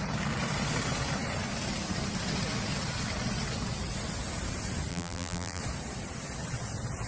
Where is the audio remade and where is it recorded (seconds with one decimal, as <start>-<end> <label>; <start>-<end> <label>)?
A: 0.0-4.9 recorded; 4.9-5.6 remade; 5.6-7.1 recorded